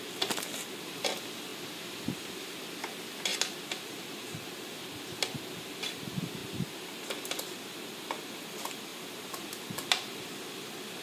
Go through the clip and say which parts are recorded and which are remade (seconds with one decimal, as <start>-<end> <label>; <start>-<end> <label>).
0.0-11.0 recorded